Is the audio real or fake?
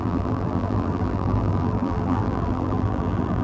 fake